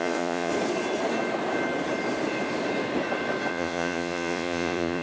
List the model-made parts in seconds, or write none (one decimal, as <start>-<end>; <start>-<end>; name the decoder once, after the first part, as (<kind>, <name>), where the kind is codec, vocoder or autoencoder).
0.0-0.5 (vocoder, Vocos); 3.5-5.0